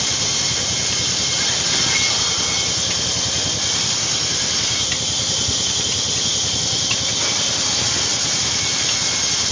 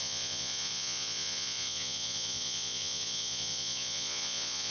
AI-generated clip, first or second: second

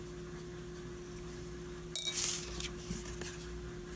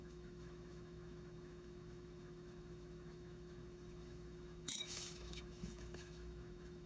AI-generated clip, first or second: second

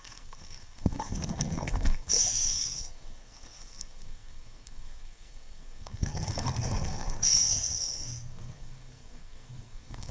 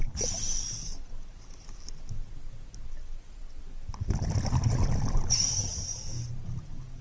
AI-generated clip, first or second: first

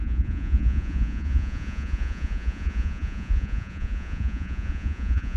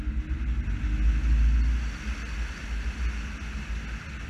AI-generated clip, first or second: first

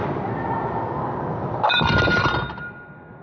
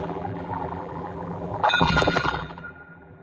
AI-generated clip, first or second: second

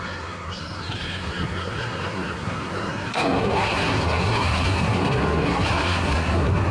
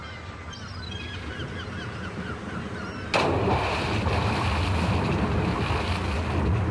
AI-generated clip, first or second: first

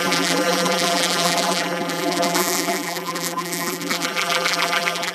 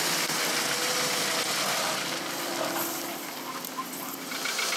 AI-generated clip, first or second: first